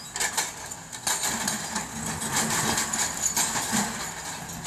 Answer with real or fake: real